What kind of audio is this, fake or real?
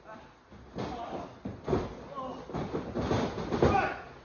real